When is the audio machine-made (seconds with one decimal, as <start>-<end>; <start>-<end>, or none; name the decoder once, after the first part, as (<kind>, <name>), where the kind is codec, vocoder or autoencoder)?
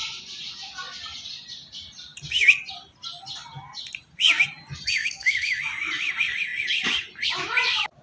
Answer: 5.0-5.6 (autoencoder, DAC-VAE)